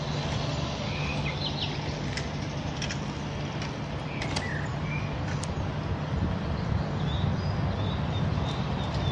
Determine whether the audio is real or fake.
real